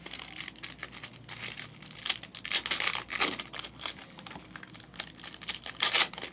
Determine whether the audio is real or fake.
real